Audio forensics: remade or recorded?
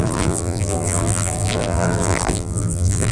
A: remade